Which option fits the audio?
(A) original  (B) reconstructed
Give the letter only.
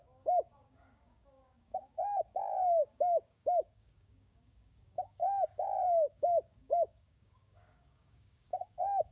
B